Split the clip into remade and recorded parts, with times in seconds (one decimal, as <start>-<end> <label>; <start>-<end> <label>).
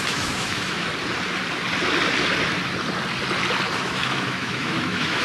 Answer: 0.0-0.9 remade; 0.9-3.8 recorded; 3.8-5.2 remade